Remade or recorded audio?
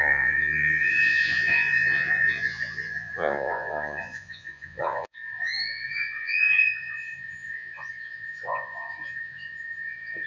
remade